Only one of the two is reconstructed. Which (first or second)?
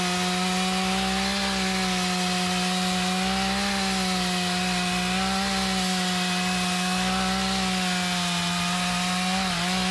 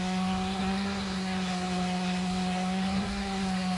second